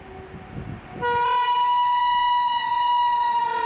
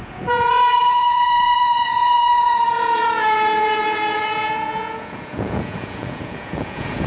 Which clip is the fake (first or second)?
second